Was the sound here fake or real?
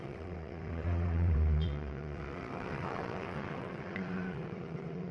fake